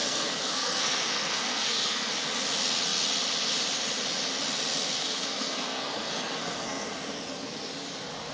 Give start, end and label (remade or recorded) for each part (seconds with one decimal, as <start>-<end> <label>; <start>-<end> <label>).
0.0-2.1 remade; 2.1-5.0 recorded; 5.0-6.9 remade; 6.9-8.3 recorded